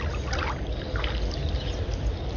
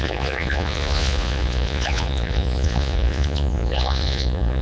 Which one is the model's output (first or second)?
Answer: second